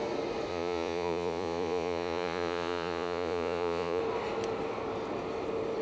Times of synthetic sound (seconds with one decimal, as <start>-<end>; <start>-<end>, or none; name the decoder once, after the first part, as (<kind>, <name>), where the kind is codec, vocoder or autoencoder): 0.5-4.0 (vocoder, Vocos)